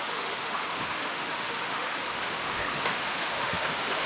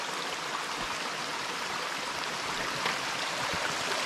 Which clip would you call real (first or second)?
second